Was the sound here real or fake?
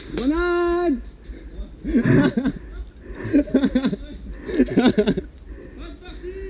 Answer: real